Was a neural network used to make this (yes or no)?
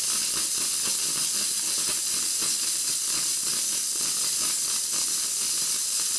no